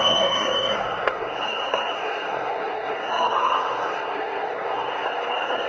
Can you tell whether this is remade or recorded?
remade